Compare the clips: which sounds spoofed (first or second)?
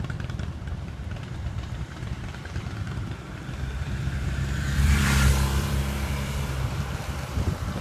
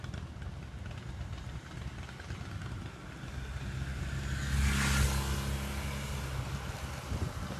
first